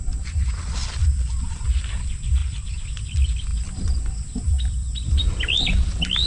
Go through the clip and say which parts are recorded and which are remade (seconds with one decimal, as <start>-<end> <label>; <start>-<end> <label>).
0.0-3.5 remade; 3.5-4.4 recorded; 4.4-5.2 remade; 5.2-6.3 recorded

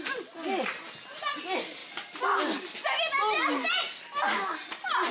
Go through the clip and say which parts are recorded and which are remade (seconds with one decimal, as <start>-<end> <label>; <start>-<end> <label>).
0.0-1.8 recorded; 1.8-2.6 remade; 2.6-5.1 recorded

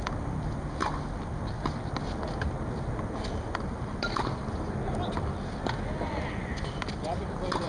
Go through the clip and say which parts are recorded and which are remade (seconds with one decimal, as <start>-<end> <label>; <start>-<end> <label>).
0.0-7.7 recorded

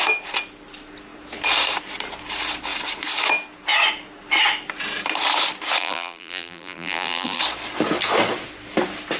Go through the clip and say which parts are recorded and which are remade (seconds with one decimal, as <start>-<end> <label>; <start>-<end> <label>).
0.0-5.8 recorded; 5.8-7.4 remade; 7.4-9.2 recorded

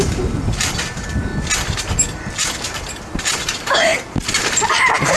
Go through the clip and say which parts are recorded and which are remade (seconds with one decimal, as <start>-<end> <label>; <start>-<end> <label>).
0.0-1.3 remade; 1.3-2.6 recorded; 2.6-3.9 remade; 3.9-5.2 recorded

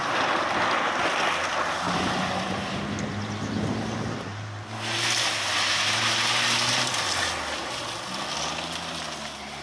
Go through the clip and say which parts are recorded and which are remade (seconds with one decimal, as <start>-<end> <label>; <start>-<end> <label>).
0.0-9.6 recorded

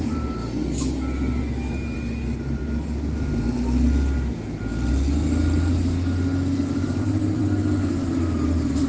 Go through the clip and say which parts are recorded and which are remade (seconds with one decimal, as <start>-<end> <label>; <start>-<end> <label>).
0.0-0.4 remade; 0.4-1.7 recorded; 1.7-2.6 remade; 2.6-6.7 recorded; 6.7-7.4 remade; 7.4-8.2 recorded; 8.2-8.9 remade